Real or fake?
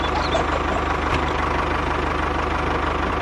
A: real